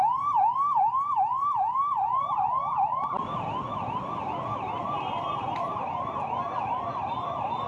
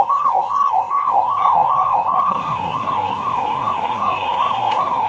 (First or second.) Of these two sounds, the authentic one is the first